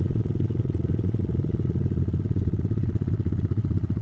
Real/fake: fake